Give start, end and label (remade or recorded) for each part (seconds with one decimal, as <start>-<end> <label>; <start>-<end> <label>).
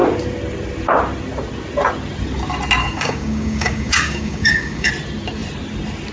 0.0-2.8 recorded; 2.8-4.9 remade; 4.9-6.1 recorded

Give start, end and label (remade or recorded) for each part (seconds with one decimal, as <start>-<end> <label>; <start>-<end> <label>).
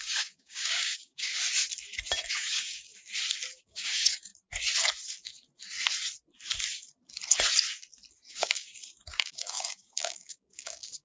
0.0-1.3 remade; 1.3-2.3 recorded; 2.3-2.9 remade; 2.9-3.6 recorded; 3.6-4.3 remade; 4.3-8.3 recorded; 8.3-11.0 remade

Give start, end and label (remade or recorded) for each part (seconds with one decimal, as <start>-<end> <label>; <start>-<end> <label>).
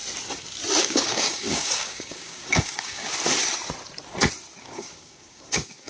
0.0-0.8 recorded; 0.8-3.1 remade; 3.1-4.6 recorded; 4.6-5.9 remade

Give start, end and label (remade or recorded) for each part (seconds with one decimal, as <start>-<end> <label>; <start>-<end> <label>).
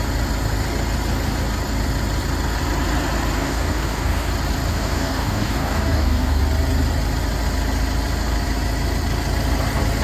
0.0-3.4 recorded; 3.4-4.3 remade; 4.3-4.7 recorded; 4.7-6.4 remade; 6.4-10.0 recorded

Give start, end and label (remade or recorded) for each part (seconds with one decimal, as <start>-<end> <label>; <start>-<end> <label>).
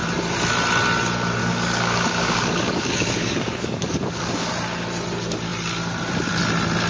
0.0-1.4 recorded; 1.4-4.5 remade; 4.5-6.9 recorded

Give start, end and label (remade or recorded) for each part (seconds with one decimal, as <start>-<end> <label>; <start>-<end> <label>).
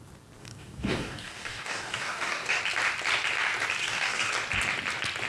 0.0-0.4 recorded; 0.4-2.6 remade; 2.6-3.8 recorded; 3.8-4.3 remade; 4.3-5.3 recorded